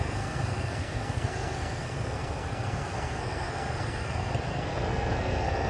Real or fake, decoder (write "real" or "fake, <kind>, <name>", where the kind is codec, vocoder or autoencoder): fake, codec, SNAC